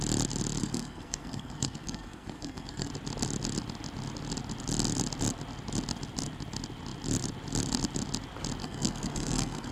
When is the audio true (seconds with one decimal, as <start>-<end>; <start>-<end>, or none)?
0.0-0.6; 2.9-8.6

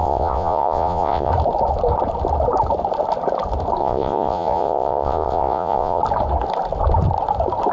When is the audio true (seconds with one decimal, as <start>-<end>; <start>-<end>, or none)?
1.3-3.8; 6.0-7.7

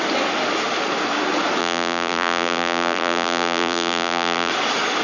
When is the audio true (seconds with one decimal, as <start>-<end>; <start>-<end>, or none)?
0.0-1.6; 4.5-5.0

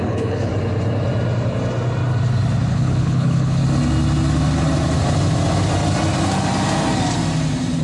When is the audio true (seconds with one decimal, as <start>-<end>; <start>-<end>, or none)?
0.5-2.7; 3.6-7.8

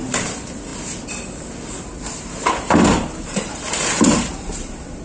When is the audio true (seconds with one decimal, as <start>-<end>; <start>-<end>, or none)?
0.7-1.8

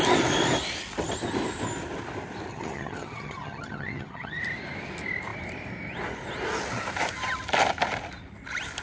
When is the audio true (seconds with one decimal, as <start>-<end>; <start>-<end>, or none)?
0.0-2.5; 4.4-8.8

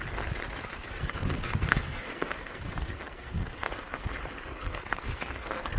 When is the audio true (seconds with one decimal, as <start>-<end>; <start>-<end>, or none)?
0.0-0.6; 4.1-4.5

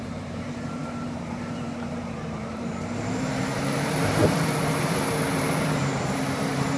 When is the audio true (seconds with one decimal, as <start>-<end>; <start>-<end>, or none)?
none